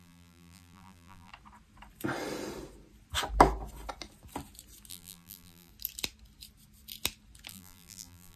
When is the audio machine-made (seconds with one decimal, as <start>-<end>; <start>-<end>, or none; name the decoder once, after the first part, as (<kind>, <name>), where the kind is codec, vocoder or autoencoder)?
0.0-1.3 (vocoder, BigVGAN v2); 4.9-5.7; 7.5-8.4

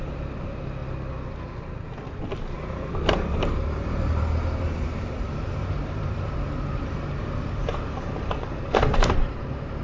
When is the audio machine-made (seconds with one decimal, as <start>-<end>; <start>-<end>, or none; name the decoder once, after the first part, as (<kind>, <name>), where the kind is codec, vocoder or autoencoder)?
0.0-0.8 (vocoder, BigVGAN v2); 2.2-9.8

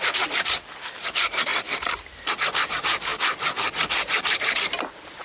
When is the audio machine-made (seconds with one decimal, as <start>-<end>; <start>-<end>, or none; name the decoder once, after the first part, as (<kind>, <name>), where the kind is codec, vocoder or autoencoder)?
0.0-1.5 (vocoder, BigVGAN v2); 2.7-3.1; 3.7-5.2